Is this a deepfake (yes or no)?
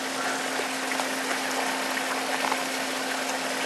no